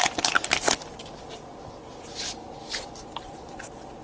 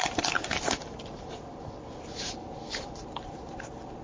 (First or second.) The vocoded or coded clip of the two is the second